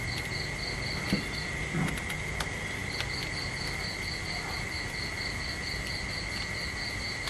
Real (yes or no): yes